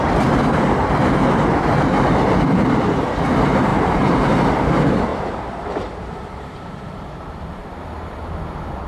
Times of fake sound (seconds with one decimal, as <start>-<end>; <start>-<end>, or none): 0.8-1.5; 3.7-4.3; 5.1-7.7